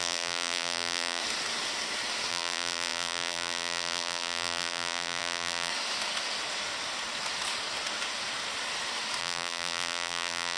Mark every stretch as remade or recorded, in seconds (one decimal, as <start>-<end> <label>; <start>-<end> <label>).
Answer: 0.0-1.2 remade; 1.2-2.3 recorded; 2.3-5.7 remade; 5.7-9.2 recorded; 9.2-10.6 remade